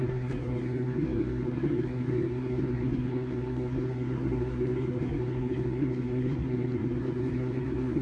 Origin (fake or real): fake